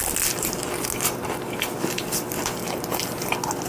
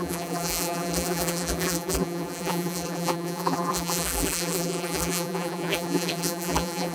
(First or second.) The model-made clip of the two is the second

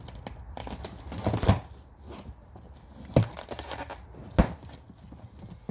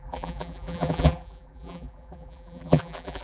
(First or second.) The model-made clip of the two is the second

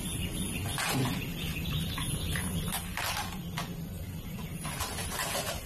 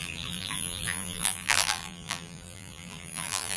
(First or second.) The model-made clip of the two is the second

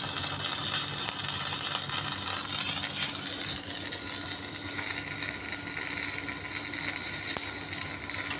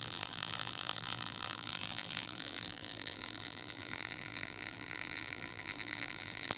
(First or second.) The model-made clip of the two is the second